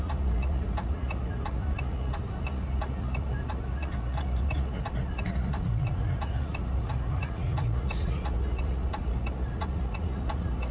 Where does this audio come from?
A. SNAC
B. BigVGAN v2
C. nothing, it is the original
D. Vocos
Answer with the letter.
D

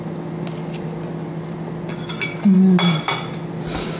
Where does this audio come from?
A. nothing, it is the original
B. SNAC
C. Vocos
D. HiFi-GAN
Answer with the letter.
A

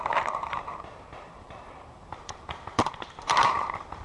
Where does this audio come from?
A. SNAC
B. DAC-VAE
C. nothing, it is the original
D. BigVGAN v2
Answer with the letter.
D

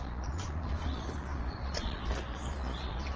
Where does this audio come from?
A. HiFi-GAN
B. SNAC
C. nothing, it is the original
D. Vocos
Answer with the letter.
D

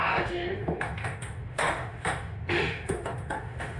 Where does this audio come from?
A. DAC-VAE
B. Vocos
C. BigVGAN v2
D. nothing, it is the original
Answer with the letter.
A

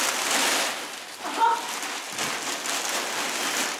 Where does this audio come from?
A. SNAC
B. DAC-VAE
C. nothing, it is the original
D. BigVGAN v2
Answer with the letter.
C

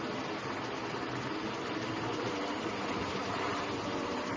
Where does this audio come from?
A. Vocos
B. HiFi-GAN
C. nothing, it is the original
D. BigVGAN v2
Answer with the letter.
C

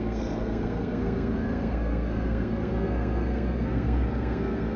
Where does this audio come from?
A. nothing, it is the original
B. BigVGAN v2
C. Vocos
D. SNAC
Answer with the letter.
D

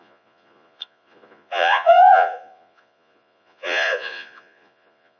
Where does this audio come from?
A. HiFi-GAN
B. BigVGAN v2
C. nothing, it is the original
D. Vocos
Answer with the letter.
D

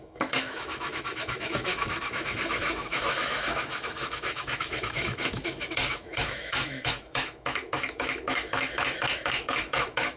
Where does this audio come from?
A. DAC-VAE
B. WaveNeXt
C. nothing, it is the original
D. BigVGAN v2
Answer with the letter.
A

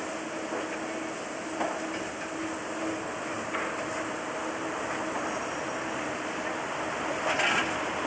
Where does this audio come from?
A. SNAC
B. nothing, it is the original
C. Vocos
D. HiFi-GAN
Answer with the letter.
B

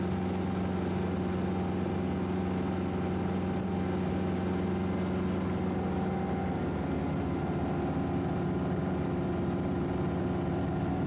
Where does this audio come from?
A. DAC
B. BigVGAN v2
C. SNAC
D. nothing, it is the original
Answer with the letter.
D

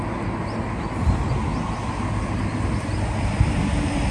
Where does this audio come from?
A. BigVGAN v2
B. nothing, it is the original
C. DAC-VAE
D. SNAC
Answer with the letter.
B